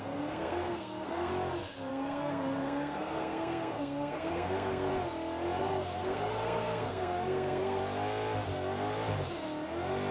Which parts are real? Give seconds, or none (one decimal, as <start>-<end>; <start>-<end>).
1.3-1.9; 4.9-5.6; 7.8-10.1